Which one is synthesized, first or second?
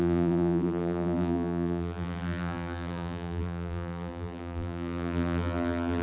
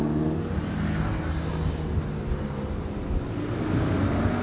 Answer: first